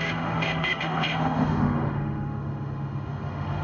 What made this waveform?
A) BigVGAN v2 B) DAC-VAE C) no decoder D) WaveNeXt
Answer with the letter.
B